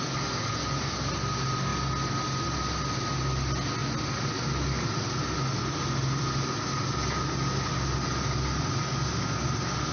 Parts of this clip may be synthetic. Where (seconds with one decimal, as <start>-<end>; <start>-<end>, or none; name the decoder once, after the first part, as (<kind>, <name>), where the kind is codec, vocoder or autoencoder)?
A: none